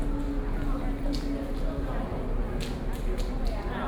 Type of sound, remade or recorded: recorded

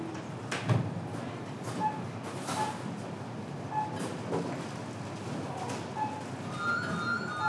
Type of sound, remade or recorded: recorded